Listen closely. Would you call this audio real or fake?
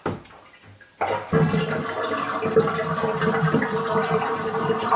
real